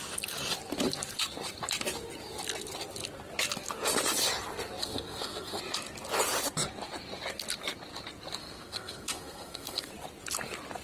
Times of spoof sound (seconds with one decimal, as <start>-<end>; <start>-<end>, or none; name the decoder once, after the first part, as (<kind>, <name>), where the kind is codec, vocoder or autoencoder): 4.8-5.6 (codec, SNAC); 8.4-9.9